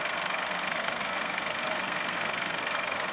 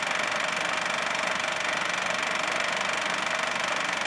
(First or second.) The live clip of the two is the second